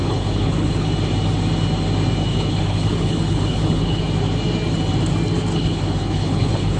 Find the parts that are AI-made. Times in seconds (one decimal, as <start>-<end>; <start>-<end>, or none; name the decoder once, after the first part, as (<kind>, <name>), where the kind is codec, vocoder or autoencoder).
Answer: 0.0-0.9 (codec, HILCodec); 2.3-4.0; 5.5-6.8